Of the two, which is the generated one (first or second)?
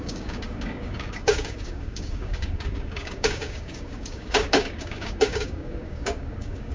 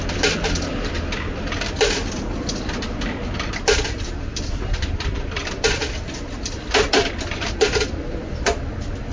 first